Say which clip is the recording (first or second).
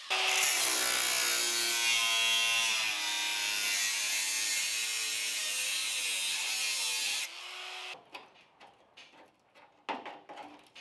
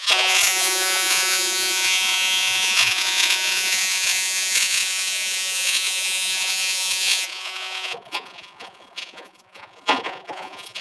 first